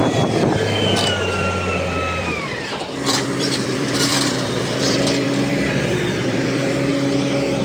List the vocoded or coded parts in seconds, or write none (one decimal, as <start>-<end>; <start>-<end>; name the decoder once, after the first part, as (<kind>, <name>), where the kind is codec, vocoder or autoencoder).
2.2-6.9 (vocoder, BigVGAN v2)